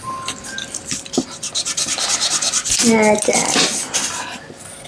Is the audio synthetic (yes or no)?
no